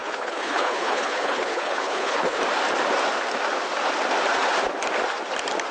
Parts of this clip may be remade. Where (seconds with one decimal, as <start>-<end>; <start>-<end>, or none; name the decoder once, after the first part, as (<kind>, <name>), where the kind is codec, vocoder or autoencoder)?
0.0-2.4 (codec, HILCodec)